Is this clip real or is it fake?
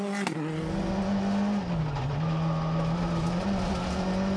real